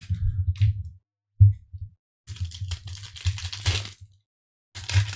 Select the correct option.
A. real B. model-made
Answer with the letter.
A